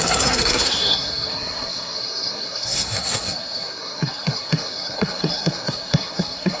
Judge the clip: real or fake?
fake